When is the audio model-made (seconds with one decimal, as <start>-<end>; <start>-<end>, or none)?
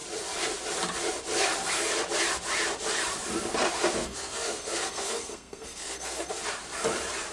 4.0-6.3